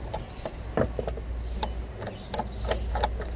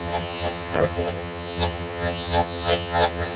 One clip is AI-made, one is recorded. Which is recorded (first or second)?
first